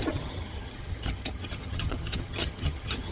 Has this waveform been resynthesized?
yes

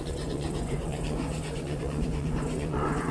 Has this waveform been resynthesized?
yes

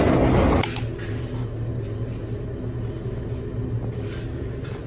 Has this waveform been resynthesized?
no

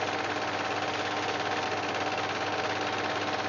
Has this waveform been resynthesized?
no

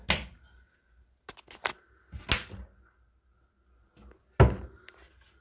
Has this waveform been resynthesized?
no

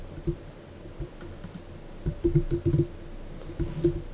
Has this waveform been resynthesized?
no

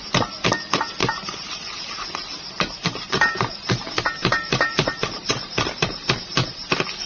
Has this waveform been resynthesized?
yes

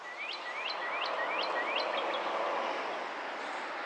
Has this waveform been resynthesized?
no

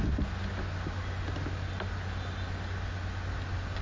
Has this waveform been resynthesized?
no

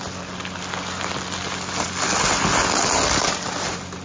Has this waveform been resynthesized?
no